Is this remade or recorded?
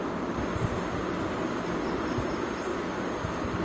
recorded